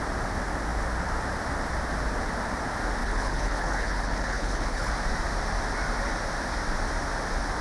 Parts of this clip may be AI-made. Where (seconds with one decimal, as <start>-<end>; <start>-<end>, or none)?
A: 3.0-4.9